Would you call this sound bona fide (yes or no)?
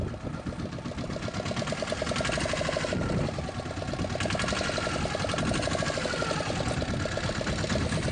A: yes